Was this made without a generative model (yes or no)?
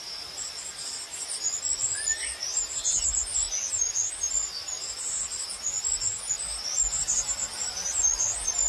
yes